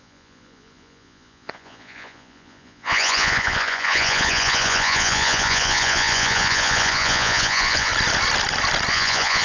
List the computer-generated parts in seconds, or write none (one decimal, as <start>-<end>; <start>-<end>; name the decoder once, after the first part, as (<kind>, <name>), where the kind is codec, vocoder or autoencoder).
0.0-7.9 (vocoder, Vocos); 8.9-9.4